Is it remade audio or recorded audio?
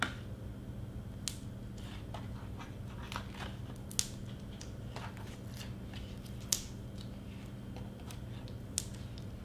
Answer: recorded